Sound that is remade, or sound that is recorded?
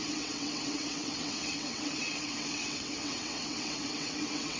remade